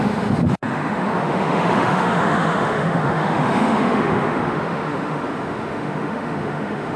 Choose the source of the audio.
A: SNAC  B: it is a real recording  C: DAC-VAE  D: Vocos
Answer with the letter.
C